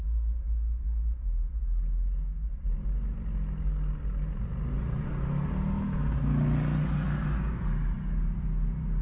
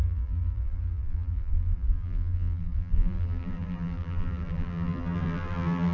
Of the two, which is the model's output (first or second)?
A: second